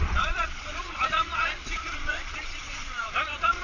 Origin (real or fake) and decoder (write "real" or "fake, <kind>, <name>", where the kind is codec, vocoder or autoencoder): fake, vocoder, Vocos